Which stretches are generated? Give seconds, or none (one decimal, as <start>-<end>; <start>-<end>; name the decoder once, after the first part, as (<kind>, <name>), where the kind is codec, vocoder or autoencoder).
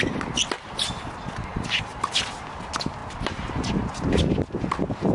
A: 1.5-2.3 (vocoder, BigVGAN v2)